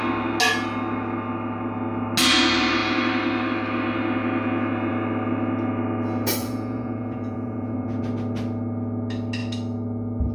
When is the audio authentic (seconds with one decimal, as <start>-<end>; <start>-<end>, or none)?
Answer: 0.0-6.4; 8.0-10.3